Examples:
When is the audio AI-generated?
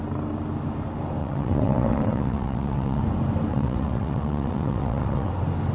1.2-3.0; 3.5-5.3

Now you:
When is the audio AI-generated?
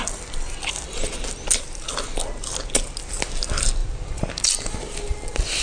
none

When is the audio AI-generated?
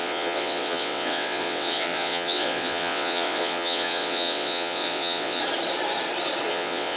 0.0-5.4; 6.5-7.0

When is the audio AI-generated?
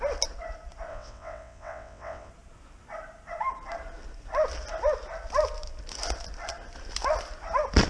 0.9-2.3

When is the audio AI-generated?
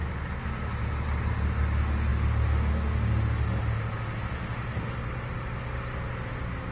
none